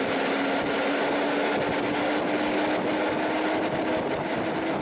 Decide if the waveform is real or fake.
real